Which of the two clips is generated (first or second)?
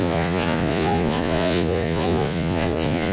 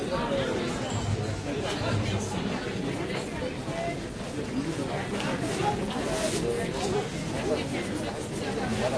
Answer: first